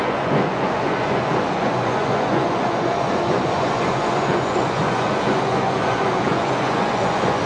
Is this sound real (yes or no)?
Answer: no